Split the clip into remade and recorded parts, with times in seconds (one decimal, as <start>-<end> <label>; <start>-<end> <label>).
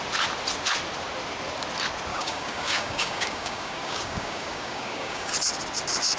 0.0-2.1 recorded; 2.1-5.3 remade; 5.3-6.2 recorded